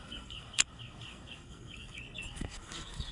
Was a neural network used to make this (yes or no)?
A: yes